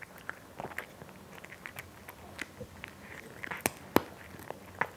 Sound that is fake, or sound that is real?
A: real